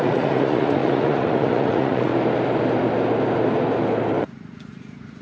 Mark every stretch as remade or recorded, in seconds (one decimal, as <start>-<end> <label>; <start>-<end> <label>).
0.0-2.1 remade; 2.1-4.2 recorded; 4.2-5.2 remade